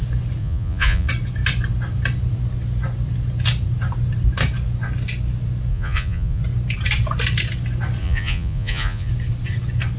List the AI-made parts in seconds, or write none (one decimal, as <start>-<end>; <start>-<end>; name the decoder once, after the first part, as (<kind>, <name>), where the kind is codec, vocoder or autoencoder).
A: 0.4-1.1 (vocoder, Vocos); 5.7-6.4; 8.0-9.1